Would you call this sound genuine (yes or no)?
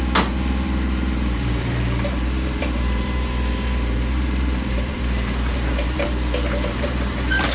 no